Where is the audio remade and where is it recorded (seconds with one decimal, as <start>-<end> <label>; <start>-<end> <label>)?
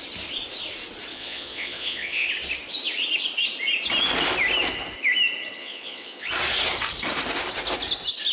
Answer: 0.0-1.1 recorded; 1.1-2.3 remade; 2.3-5.6 recorded; 5.6-6.3 remade; 6.3-8.3 recorded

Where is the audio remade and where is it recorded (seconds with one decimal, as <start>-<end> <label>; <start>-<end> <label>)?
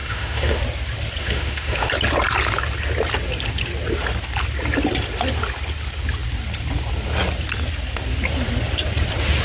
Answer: 0.0-0.6 remade; 0.6-1.2 recorded; 1.2-1.9 remade; 1.9-9.4 recorded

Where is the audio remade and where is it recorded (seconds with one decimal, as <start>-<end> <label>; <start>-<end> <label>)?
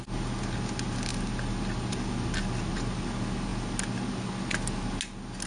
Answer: 0.0-5.5 recorded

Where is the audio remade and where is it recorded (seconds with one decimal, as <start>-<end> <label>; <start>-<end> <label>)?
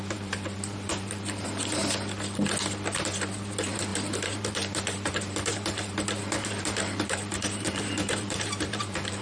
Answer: 0.0-1.8 remade; 1.8-3.0 recorded; 3.0-9.2 remade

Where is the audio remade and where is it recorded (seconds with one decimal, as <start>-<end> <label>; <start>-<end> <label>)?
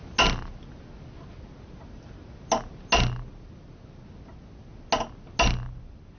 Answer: 0.0-6.2 recorded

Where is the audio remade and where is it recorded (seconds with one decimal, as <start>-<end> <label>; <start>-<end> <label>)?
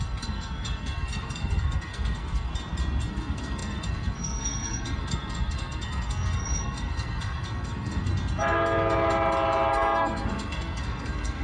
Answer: 0.0-2.5 remade; 2.5-3.1 recorded; 3.1-8.1 remade; 8.1-9.7 recorded; 9.7-11.4 remade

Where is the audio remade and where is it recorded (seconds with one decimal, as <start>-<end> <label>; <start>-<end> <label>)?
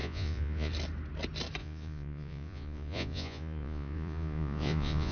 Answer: 0.0-0.7 remade; 0.7-1.6 recorded; 1.6-5.1 remade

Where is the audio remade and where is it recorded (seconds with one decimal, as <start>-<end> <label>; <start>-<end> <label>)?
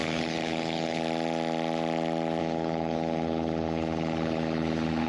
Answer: 0.0-1.0 remade; 1.0-2.4 recorded; 2.4-5.1 remade